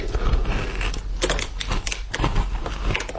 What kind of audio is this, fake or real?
real